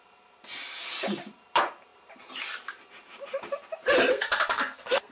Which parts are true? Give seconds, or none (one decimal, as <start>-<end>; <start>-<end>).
0.0-4.1

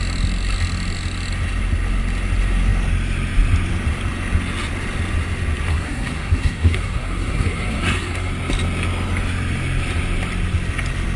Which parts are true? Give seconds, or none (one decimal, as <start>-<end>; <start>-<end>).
0.0-5.7; 8.3-11.2

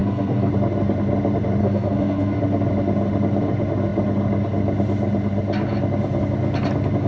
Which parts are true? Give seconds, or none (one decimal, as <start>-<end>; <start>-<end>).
0.5-1.6; 2.4-7.1

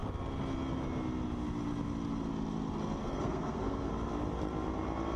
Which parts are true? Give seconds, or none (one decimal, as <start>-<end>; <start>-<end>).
0.0-3.0; 3.9-5.2

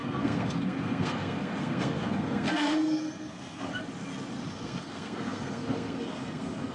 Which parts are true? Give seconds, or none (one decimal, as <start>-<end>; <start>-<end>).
3.7-4.5

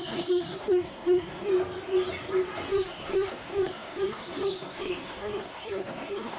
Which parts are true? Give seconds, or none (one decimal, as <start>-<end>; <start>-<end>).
1.5-2.7

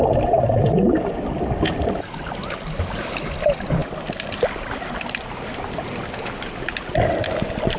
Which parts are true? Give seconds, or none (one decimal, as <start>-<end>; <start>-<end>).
0.0-7.8